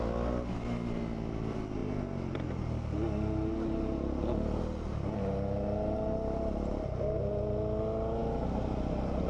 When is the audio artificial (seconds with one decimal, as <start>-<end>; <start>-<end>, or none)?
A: none

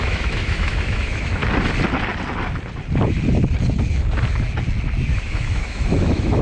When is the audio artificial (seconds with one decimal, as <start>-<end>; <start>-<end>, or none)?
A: 0.0-1.4; 5.2-6.4